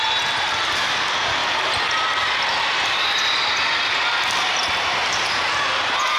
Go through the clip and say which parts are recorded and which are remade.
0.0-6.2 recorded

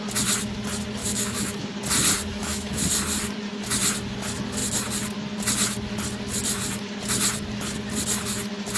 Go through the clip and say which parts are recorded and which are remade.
0.0-1.0 recorded; 1.0-1.7 remade; 1.7-2.3 recorded; 2.3-2.8 remade; 2.8-8.8 recorded

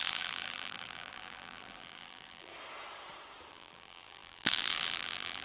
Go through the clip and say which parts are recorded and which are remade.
0.0-2.5 remade; 2.5-3.5 recorded; 3.5-5.4 remade

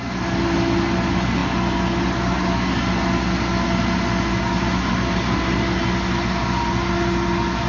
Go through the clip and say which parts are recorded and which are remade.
0.0-7.7 recorded

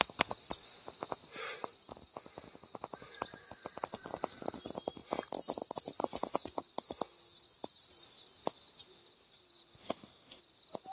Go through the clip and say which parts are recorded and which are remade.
0.0-9.8 recorded; 9.8-10.4 remade; 10.4-10.9 recorded

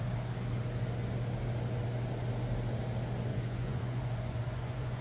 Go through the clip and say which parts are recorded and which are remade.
0.0-3.3 recorded; 3.3-5.0 remade

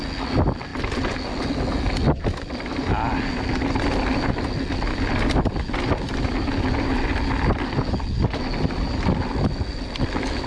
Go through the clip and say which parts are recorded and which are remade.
0.0-10.5 recorded